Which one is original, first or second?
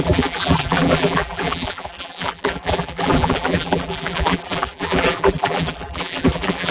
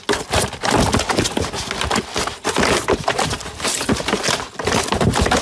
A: second